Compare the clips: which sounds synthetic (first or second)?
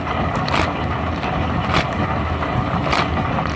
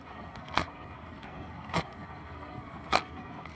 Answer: second